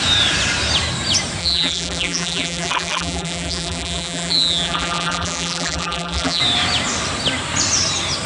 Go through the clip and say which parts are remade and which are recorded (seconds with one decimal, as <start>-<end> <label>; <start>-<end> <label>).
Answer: 0.0-1.4 recorded; 1.4-6.4 remade; 6.4-8.3 recorded